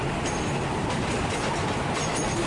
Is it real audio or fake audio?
real